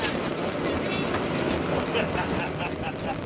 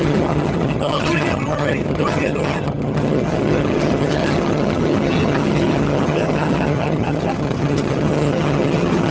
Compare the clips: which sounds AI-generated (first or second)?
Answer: second